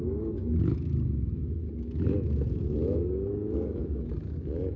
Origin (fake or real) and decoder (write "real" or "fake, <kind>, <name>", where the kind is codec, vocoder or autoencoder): fake, autoencoder, DAC-VAE